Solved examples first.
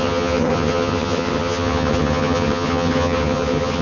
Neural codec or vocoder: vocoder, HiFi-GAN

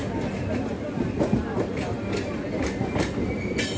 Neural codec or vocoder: none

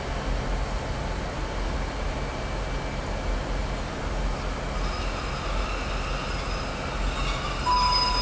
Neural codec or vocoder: none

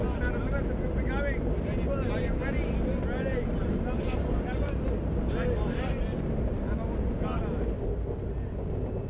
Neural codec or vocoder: none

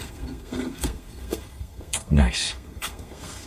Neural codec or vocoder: codec, SNAC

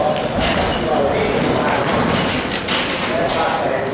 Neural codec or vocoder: none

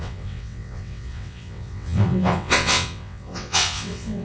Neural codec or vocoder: vocoder, WaveNeXt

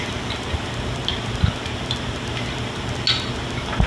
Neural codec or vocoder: none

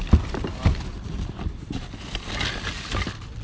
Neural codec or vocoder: none